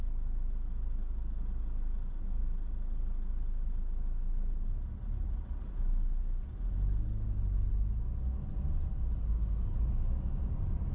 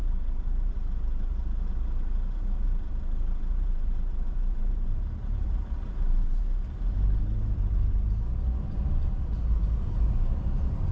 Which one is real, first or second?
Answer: first